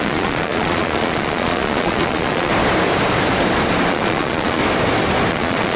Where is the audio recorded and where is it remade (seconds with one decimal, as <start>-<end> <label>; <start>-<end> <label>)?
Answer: 0.0-2.5 remade; 2.5-3.9 recorded; 3.9-4.6 remade; 4.6-5.3 recorded; 5.3-5.8 remade